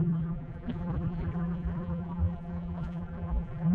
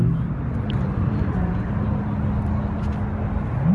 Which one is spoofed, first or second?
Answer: first